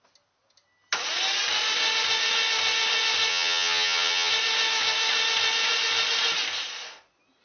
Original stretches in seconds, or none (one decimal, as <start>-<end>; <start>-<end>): 0.0-3.3; 4.3-7.4